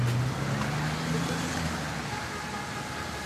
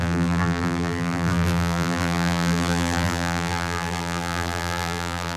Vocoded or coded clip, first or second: second